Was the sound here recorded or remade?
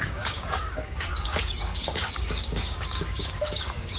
remade